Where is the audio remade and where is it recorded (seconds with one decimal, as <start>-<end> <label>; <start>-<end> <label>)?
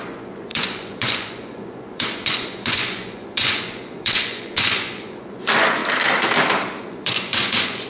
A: 0.0-5.8 remade; 5.8-6.9 recorded; 6.9-7.9 remade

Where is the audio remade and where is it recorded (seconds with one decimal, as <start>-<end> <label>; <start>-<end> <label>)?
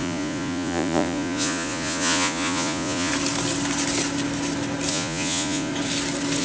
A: 0.0-3.1 remade; 3.1-4.9 recorded; 4.9-5.7 remade; 5.7-6.4 recorded